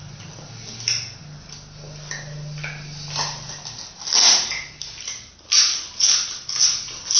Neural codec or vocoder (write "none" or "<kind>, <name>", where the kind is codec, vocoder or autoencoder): none